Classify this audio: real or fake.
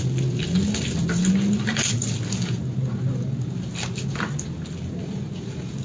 real